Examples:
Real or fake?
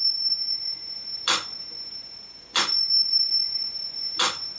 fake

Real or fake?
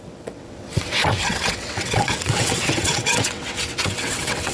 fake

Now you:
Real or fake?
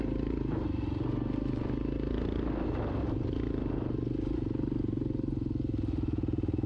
real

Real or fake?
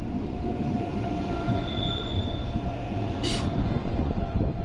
fake